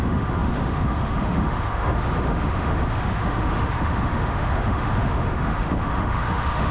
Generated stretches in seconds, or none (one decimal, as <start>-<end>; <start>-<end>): 0.0-6.7